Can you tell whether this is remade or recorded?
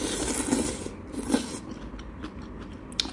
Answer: recorded